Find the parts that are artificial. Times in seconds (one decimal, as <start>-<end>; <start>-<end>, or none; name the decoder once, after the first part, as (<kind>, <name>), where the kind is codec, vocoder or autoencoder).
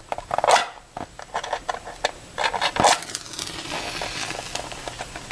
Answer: none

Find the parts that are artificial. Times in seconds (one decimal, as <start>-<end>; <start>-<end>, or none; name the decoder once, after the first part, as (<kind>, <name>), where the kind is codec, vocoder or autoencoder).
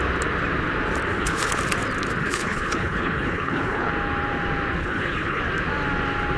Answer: 1.1-1.6 (codec, HILCodec); 2.2-3.9; 4.8-5.4